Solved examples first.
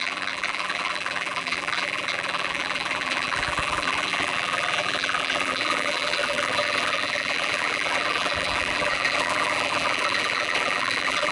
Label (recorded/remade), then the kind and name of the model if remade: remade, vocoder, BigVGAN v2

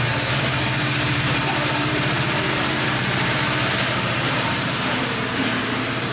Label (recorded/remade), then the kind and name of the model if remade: remade, vocoder, BigVGAN v2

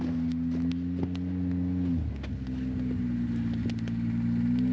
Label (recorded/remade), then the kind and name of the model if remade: recorded